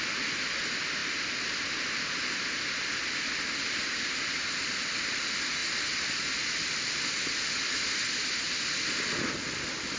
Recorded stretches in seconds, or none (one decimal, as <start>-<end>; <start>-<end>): 0.0-10.0